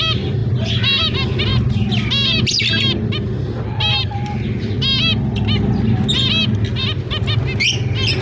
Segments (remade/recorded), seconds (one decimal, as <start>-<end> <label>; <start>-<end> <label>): 0.0-8.2 recorded